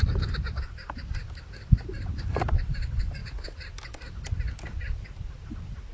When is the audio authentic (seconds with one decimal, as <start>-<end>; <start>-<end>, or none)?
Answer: 0.0-5.9